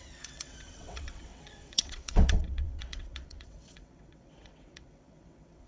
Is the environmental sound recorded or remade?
remade